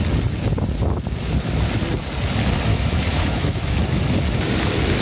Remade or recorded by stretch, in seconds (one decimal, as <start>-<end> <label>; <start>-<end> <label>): 0.0-2.7 recorded; 2.7-3.7 remade; 3.7-5.0 recorded

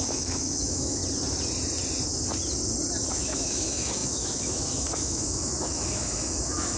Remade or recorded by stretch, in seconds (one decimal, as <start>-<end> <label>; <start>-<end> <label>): 0.0-1.0 remade; 1.0-3.1 recorded; 3.1-6.8 remade

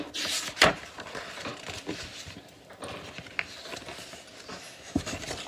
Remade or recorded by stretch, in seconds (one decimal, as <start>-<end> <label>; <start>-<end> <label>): 0.0-4.5 recorded; 4.5-5.1 remade; 5.1-5.5 recorded

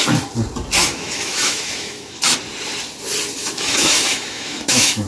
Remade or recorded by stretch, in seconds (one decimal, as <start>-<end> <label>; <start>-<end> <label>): 0.0-0.8 recorded; 0.8-2.2 remade; 2.2-3.4 recorded; 3.4-5.1 remade

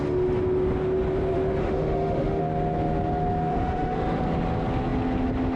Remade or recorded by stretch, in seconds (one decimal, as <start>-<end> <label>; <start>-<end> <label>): 0.0-1.6 recorded; 1.6-2.4 remade; 2.4-3.5 recorded; 3.5-4.2 remade; 4.2-5.6 recorded

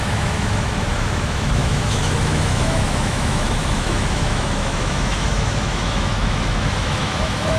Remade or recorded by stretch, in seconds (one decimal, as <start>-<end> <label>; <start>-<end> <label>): 0.0-7.6 remade

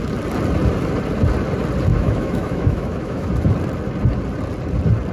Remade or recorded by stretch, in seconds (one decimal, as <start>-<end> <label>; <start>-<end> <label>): 0.0-1.9 recorded; 1.9-3.3 remade; 3.3-5.1 recorded